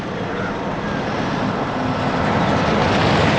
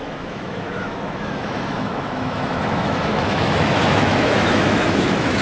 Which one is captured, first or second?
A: first